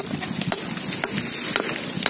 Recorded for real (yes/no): yes